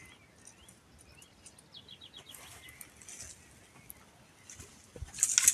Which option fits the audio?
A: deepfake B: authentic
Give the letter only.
B